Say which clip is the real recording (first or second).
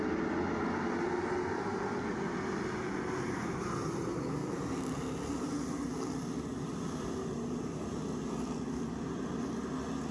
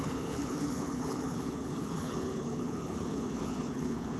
first